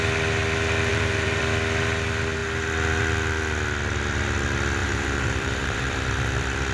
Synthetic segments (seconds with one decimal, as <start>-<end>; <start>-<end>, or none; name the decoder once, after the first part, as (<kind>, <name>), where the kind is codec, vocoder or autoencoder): 0.9-1.4 (vocoder, BigVGAN v2); 4.8-6.0